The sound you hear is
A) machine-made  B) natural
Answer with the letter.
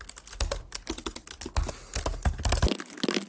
B